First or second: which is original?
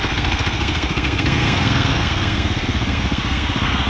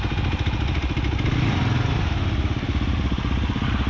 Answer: second